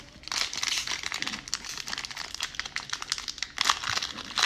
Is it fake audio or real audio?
real